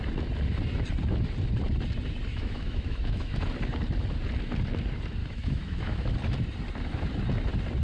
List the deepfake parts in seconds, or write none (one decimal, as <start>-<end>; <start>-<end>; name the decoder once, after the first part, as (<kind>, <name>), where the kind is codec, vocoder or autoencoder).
2.3-3.4 (autoencoder, DAC-VAE); 5.2-6.1